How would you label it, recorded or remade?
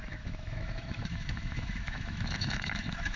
remade